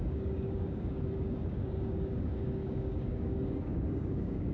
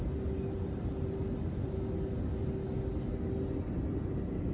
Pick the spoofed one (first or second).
first